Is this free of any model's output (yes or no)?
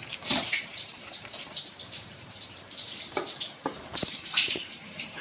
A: no